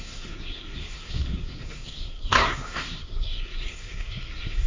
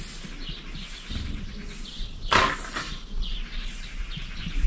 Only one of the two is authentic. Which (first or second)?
second